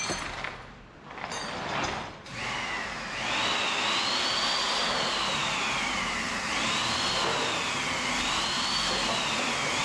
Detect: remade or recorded recorded